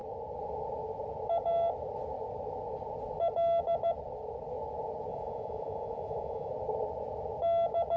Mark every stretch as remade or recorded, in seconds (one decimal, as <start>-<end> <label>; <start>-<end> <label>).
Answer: 0.0-5.1 recorded; 5.1-6.5 remade; 6.5-8.0 recorded